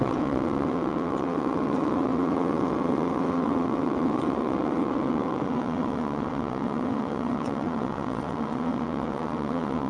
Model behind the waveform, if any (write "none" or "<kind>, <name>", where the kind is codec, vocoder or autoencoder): vocoder, WaveNeXt